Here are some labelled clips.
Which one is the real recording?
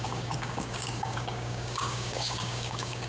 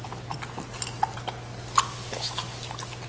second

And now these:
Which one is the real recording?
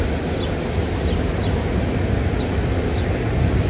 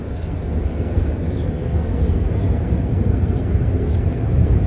first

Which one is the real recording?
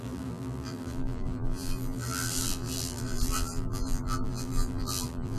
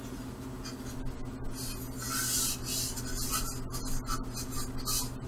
second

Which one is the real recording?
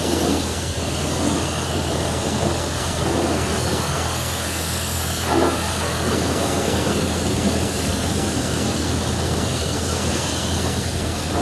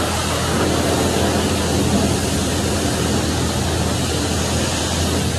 second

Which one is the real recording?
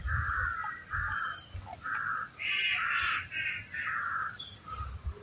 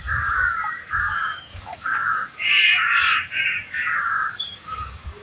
first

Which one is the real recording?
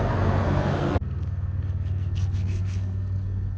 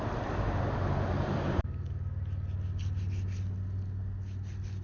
second